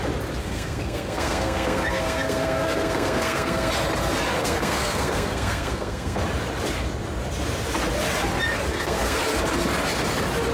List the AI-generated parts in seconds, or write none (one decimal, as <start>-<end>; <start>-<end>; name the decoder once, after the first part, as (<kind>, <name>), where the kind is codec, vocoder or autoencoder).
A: 0.4-3.7 (codec, SNAC); 4.4-6.2; 8.7-9.2